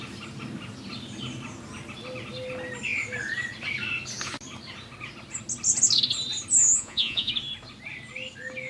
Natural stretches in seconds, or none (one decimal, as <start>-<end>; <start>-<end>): 0.0-6.6; 7.3-8.7

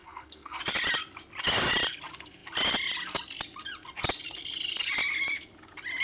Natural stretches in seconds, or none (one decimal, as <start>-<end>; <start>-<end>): 0.6-6.0

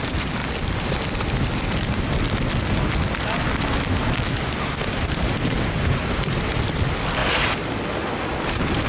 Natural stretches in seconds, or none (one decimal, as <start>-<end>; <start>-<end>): 0.4-4.9; 7.2-8.3

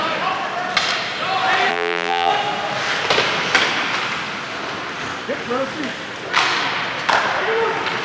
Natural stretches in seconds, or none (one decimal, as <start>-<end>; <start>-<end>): 0.0-1.7; 2.3-8.0